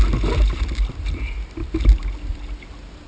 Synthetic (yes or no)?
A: no